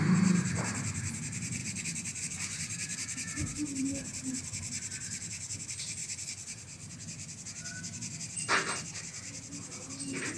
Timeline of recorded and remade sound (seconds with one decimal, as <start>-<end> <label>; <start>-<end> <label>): 0.0-6.0 remade; 6.0-10.4 recorded

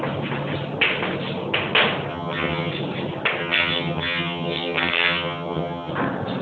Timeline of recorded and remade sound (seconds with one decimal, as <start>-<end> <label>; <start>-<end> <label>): 0.0-2.1 recorded; 2.1-2.7 remade; 2.7-3.4 recorded; 3.4-5.9 remade; 5.9-6.4 recorded

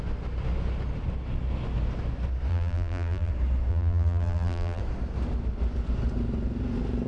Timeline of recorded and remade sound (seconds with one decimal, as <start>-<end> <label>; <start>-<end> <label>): 0.0-2.5 recorded; 2.5-3.3 remade; 3.3-3.7 recorded; 3.7-4.8 remade; 4.8-7.1 recorded

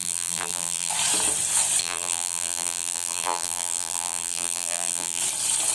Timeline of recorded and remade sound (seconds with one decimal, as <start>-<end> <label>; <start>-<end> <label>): 0.0-0.9 remade; 0.9-1.8 recorded; 1.8-5.2 remade; 5.2-5.7 recorded

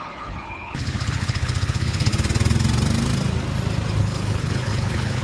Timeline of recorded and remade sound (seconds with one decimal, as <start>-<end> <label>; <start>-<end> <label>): 0.0-2.1 remade; 2.1-4.0 recorded; 4.0-5.2 remade